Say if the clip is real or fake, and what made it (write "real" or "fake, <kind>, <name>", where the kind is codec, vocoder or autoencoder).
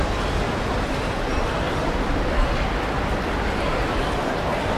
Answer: real